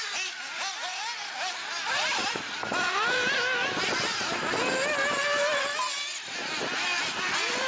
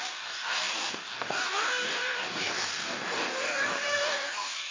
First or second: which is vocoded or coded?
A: second